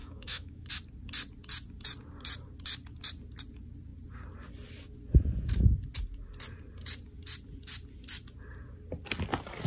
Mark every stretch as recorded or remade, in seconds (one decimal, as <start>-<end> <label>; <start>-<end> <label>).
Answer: 0.0-0.7 remade; 0.7-9.7 recorded